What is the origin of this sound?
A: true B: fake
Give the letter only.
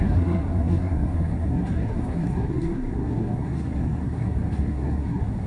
B